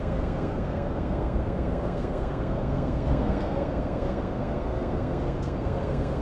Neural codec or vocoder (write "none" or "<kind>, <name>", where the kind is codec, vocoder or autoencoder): codec, SNAC